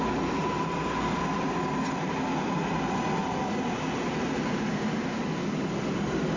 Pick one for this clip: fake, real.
real